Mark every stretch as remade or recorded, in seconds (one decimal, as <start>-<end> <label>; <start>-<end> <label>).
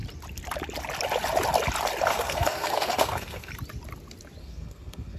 0.0-2.1 recorded; 2.1-3.5 remade; 3.5-4.4 recorded; 4.4-5.2 remade